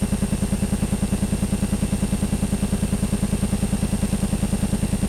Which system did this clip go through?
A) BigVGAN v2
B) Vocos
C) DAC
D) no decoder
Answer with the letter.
D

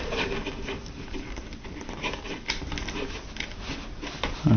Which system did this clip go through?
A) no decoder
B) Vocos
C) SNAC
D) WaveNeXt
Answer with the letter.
A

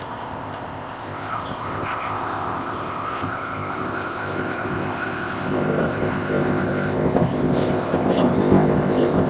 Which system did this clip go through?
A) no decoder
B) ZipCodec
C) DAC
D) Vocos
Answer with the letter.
B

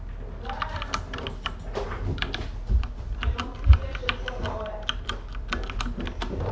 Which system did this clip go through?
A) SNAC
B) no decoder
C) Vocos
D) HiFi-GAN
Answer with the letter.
B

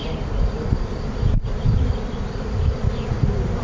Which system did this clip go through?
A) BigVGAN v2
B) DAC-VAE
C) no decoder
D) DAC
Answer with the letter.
C